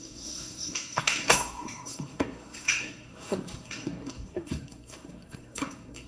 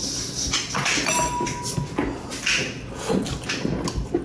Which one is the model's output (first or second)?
first